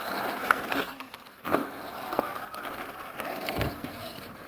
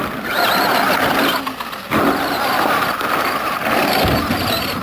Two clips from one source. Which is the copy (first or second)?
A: first